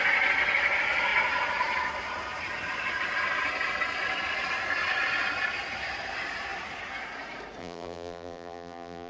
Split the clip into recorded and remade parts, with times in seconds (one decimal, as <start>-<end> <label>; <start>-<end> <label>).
0.0-7.6 recorded; 7.6-9.1 remade